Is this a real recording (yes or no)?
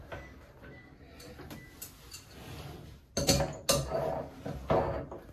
yes